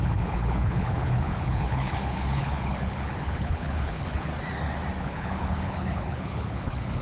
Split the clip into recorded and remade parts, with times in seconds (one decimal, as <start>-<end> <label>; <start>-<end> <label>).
0.0-4.3 remade; 4.3-5.0 recorded; 5.0-7.0 remade